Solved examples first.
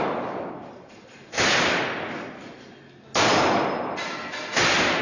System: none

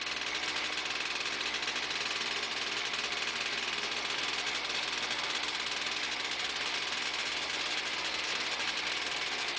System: none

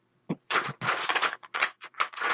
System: vocoder, Vocos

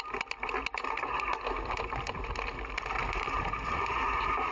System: none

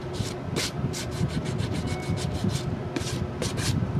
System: none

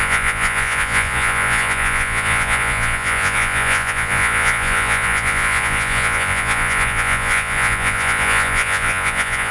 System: vocoder, Vocos